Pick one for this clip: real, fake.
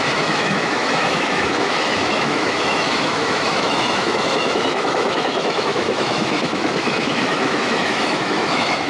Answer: fake